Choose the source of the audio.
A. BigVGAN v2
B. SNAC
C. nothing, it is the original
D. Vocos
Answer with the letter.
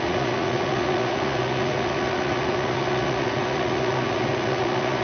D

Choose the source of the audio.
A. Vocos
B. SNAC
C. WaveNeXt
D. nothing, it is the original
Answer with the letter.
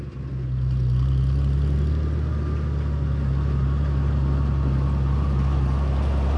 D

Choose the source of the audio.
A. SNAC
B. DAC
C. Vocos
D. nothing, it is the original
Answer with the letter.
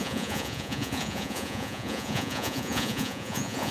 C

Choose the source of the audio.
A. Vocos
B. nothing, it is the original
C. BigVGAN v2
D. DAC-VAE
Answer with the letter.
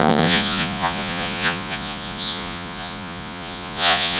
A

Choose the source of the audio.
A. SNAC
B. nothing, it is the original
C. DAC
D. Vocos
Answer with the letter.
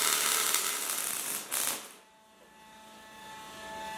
B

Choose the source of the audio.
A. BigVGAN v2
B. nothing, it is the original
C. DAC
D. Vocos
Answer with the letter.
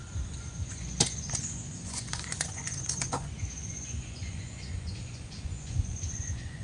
D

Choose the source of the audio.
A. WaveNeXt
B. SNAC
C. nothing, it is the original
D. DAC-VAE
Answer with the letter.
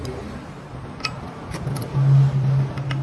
C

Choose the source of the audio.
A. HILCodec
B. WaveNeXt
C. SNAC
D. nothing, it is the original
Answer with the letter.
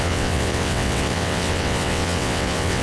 B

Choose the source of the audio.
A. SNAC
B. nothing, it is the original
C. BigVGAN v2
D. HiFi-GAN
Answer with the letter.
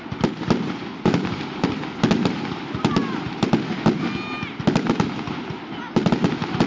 B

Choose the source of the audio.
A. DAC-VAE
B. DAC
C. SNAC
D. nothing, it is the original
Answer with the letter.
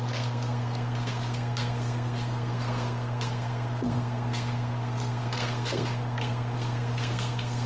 C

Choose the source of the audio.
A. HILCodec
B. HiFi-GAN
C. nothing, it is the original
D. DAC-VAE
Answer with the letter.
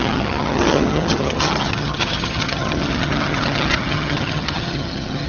B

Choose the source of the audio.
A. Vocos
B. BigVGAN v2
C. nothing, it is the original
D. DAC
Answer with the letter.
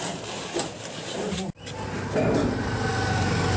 C